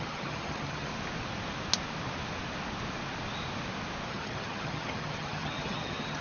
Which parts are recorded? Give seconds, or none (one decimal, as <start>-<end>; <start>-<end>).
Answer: 0.9-4.1